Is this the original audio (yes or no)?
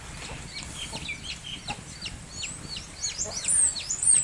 yes